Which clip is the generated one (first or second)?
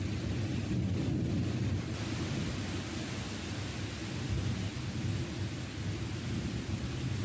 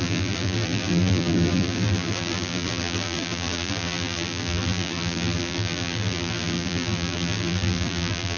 second